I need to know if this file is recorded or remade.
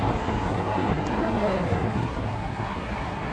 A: remade